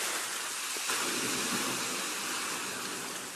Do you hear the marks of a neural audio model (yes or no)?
no